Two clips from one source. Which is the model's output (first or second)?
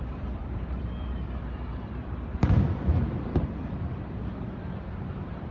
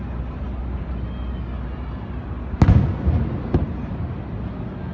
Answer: first